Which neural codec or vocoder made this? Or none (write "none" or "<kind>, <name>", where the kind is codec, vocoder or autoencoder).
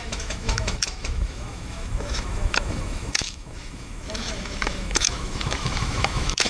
autoencoder, DAC-VAE